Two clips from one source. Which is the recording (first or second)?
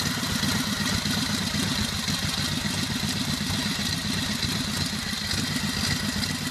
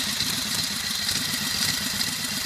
first